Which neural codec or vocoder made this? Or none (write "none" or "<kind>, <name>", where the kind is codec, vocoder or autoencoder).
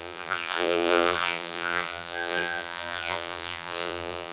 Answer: vocoder, BigVGAN v2